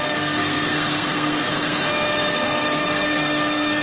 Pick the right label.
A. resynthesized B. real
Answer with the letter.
A